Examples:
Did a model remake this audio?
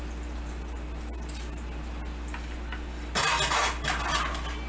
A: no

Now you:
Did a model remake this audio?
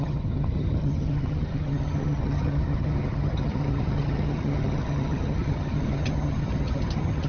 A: yes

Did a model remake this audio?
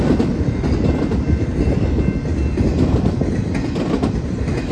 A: no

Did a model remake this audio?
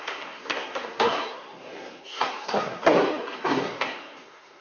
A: yes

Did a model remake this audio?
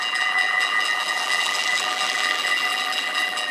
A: yes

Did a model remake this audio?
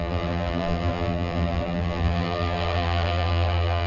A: yes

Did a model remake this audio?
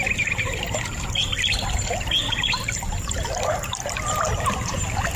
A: no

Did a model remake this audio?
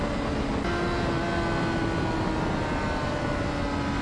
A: no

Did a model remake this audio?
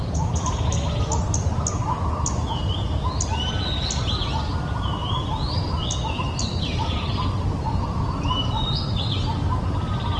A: no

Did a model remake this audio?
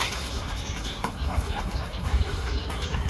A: yes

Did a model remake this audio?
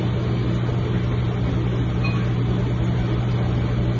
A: no